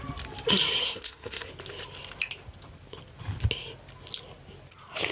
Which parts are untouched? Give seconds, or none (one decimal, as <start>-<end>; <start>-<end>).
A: 0.0-0.8; 1.5-5.1